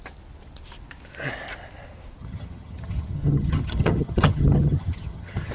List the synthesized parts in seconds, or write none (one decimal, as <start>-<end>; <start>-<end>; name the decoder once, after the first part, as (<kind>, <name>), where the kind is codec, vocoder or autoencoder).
2.2-5.5 (vocoder, HiFi-GAN)